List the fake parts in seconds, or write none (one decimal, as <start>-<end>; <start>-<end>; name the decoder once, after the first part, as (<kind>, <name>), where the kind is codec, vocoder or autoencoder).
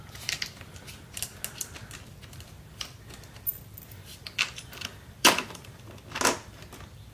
4.0-5.8 (vocoder, BigVGAN v2)